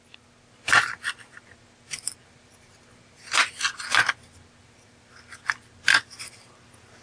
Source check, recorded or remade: recorded